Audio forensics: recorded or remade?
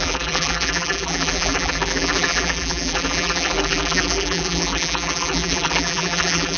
remade